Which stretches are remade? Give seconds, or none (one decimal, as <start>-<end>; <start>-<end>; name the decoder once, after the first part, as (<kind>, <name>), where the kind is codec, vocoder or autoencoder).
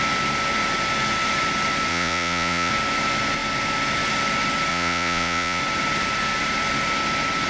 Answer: 1.9-2.7 (vocoder, Vocos); 4.7-5.6